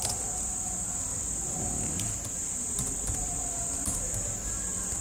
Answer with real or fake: real